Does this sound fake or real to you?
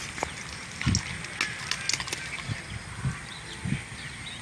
real